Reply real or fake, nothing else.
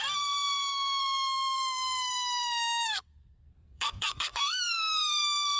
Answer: fake